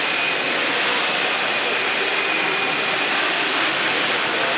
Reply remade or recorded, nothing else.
recorded